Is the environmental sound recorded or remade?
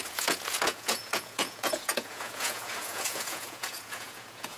remade